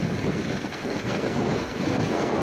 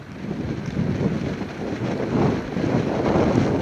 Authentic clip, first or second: second